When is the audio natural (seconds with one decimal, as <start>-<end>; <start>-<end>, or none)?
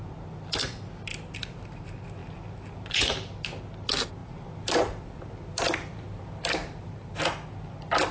0.0-1.1; 1.8-4.2; 7.2-8.1